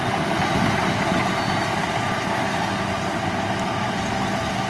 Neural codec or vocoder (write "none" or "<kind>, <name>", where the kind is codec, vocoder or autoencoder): none